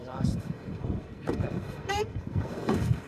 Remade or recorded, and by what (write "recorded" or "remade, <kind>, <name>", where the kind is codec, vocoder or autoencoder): remade, codec, SNAC